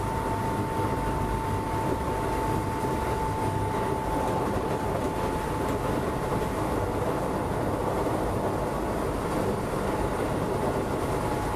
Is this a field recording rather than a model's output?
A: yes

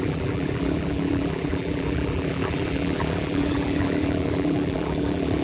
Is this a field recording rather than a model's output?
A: no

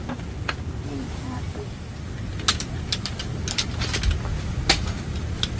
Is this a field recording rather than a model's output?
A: yes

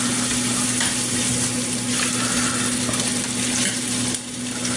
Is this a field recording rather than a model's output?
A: no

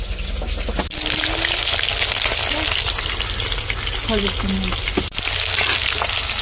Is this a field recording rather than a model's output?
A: yes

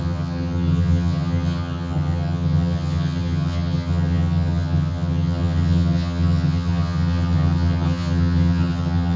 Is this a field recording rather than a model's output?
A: no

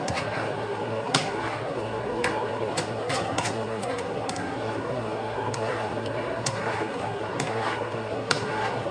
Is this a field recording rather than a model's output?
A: no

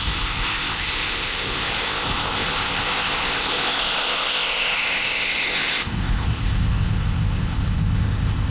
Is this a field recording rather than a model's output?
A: no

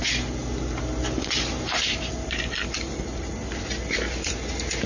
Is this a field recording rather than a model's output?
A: yes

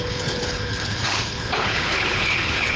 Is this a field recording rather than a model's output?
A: no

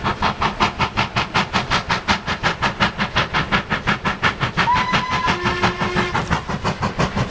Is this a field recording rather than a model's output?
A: yes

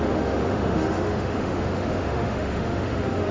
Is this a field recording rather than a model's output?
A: no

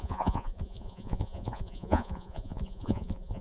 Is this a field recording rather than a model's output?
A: no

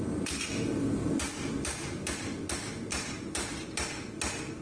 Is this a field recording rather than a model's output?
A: yes